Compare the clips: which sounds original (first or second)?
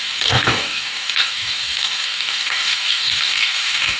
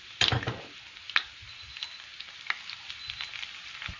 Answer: second